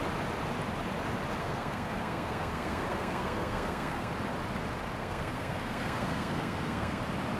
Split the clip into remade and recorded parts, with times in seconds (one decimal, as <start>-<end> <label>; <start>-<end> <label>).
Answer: 0.0-1.4 recorded; 1.4-4.1 remade; 4.1-5.0 recorded; 5.0-7.0 remade; 7.0-7.4 recorded